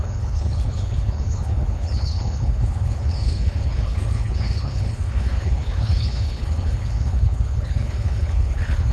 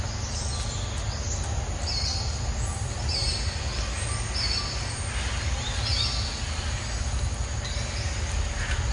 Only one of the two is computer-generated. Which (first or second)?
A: first